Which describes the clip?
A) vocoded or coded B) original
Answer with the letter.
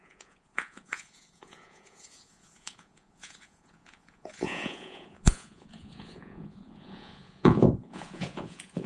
A